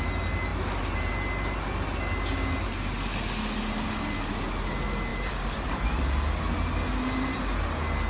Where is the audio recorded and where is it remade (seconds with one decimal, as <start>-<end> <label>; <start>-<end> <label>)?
0.0-5.1 recorded; 5.1-6.0 remade; 6.0-8.1 recorded